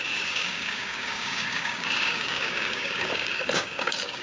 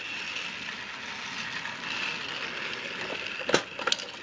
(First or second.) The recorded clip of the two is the second